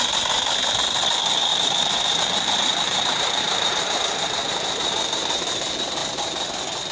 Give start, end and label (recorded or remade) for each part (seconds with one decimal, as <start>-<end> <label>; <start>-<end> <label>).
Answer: 0.0-1.5 recorded; 1.5-5.6 remade; 5.6-6.9 recorded